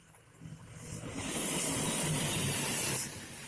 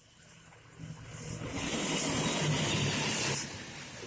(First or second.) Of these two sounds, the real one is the second